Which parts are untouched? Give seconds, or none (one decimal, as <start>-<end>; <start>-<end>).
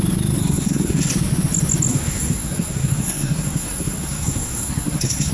0.0-0.4; 1.1-1.9